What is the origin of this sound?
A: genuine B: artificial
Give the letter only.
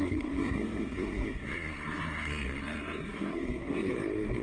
B